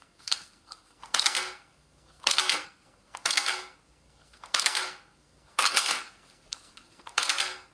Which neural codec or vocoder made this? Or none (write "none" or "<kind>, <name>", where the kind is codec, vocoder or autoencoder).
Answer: codec, SNAC